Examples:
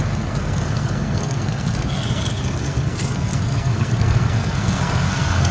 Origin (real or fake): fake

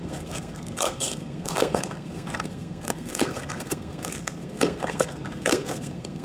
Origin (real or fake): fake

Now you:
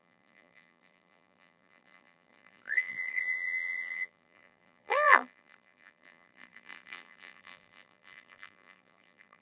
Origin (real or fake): fake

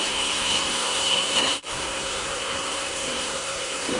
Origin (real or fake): fake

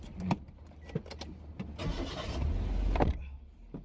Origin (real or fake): real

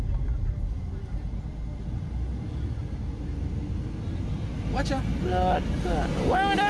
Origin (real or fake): real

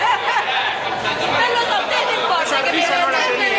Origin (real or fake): real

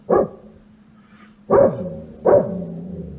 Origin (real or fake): fake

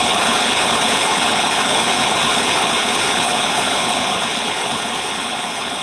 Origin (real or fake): fake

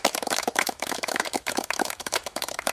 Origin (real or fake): fake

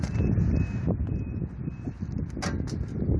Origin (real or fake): real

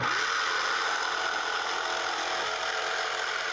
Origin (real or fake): real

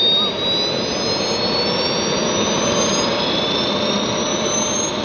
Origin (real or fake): real